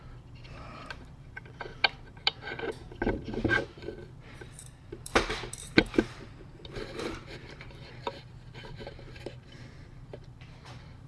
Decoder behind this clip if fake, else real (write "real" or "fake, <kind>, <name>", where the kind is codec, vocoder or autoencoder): fake, vocoder, BigVGAN v2